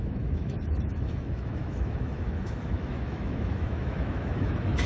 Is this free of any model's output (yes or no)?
no